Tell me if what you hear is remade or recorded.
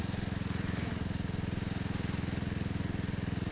recorded